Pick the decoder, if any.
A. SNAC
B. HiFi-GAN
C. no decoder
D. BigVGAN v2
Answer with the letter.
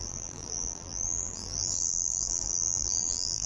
D